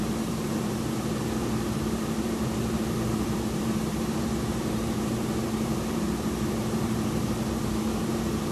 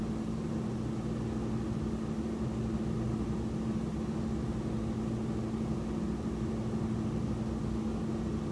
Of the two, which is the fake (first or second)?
first